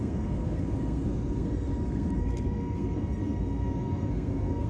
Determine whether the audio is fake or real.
fake